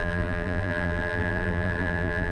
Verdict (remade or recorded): remade